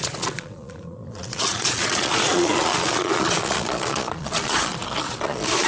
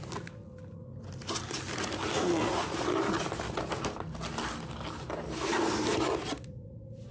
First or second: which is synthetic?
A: first